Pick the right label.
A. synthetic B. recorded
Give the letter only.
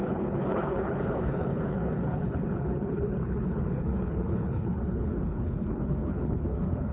A